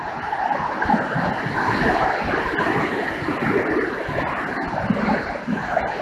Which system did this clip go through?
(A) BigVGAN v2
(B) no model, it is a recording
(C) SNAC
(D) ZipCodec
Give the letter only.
B